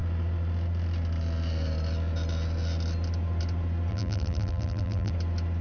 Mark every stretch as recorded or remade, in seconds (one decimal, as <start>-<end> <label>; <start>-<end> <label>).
0.0-3.9 recorded; 3.9-5.1 remade; 5.1-5.6 recorded